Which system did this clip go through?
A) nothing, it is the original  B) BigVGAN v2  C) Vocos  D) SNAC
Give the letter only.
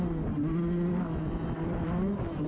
A